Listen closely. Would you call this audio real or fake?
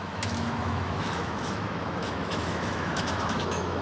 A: fake